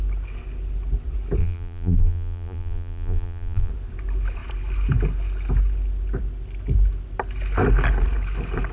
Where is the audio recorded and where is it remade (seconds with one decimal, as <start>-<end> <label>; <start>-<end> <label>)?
0.0-1.4 recorded; 1.4-3.7 remade; 3.7-8.7 recorded